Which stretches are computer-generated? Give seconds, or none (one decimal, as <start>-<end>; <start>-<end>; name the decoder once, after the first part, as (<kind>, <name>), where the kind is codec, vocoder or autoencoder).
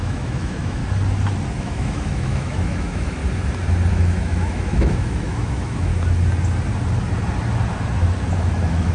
0.0-0.8 (autoencoder, DAC-VAE); 1.6-3.2; 3.9-5.9; 8.4-8.9